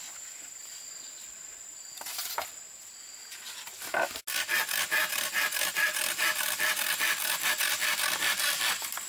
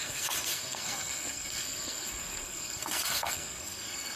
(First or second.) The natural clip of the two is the first